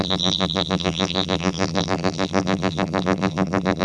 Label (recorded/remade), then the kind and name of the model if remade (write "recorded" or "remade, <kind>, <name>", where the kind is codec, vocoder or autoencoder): remade, vocoder, BigVGAN v2